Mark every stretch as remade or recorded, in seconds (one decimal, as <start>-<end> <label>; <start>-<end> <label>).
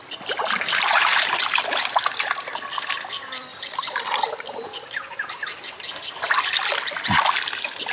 0.0-7.9 recorded